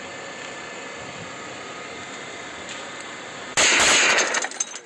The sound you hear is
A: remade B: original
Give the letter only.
B